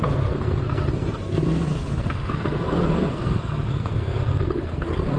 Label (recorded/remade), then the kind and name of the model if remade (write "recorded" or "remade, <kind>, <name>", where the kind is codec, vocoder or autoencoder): remade, codec, SNAC